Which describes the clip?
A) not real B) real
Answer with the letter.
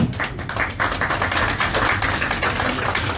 A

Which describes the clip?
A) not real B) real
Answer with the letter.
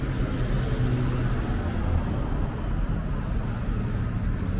B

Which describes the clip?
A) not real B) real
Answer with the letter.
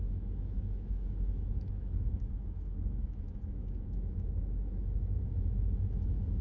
A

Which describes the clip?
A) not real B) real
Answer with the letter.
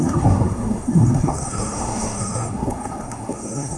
A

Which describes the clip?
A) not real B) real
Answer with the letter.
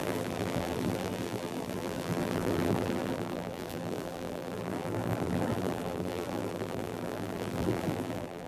A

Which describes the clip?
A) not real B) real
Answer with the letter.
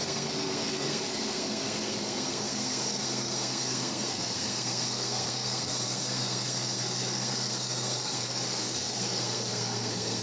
A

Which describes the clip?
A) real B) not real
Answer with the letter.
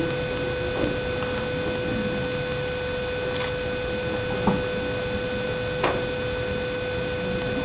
A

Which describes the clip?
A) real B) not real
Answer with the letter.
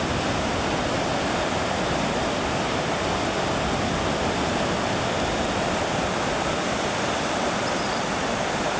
A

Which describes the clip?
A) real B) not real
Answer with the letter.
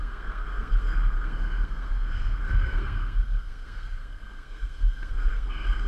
B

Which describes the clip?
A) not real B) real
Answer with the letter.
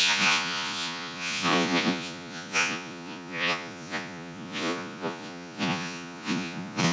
A